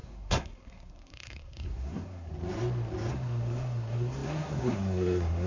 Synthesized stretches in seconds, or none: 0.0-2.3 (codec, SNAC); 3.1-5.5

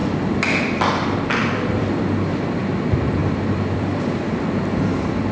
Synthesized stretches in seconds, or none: 0.0-5.3 (vocoder, BigVGAN v2)

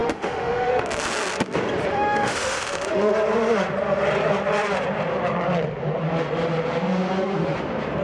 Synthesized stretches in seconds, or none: 0.0-0.7 (autoencoder, DAC-VAE); 1.9-3.1